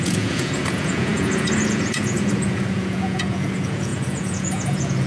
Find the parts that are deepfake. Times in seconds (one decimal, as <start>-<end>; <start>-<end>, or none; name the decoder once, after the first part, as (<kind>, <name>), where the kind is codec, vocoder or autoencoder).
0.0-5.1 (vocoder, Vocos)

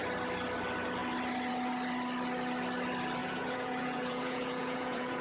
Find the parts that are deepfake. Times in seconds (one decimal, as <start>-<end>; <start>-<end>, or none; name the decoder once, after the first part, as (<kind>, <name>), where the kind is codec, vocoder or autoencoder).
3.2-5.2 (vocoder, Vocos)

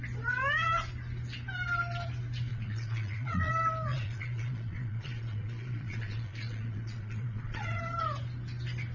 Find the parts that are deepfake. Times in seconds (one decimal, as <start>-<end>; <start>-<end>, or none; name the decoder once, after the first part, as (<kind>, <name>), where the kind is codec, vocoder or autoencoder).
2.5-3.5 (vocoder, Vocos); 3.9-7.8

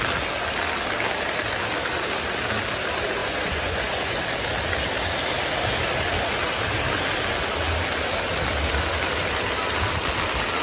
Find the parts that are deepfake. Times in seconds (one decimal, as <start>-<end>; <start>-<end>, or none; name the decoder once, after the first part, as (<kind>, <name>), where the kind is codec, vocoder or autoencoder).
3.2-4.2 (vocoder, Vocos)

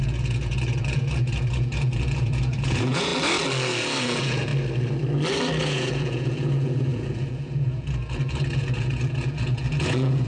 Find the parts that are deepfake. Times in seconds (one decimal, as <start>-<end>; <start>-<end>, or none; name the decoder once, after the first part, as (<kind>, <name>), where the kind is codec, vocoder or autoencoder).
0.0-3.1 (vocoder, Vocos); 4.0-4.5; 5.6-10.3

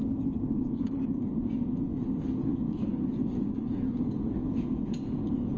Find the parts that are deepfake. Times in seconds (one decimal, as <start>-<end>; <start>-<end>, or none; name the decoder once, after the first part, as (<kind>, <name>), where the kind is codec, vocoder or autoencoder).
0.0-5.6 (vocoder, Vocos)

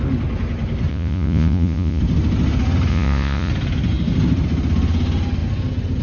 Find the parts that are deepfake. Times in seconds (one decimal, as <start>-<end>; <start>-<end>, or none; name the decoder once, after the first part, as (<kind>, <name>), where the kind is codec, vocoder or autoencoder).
0.9-2.0 (vocoder, Vocos); 2.9-3.5

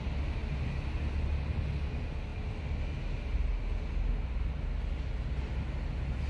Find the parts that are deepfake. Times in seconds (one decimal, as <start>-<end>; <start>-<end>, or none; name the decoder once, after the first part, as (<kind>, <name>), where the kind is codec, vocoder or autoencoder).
none